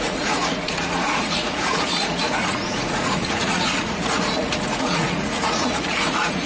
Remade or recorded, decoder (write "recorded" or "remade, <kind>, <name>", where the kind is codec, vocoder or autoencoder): remade, vocoder, Vocos